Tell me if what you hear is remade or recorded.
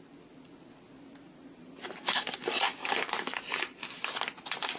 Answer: recorded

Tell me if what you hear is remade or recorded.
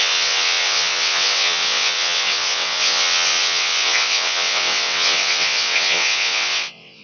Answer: remade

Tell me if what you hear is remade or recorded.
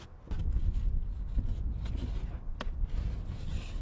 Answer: recorded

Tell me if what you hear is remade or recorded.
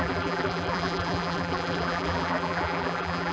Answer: remade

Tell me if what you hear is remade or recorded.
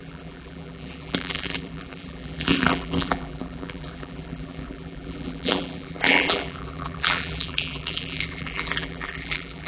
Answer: remade